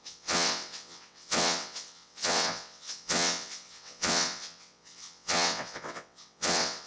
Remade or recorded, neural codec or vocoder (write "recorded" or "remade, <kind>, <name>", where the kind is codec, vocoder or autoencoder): remade, vocoder, WaveNeXt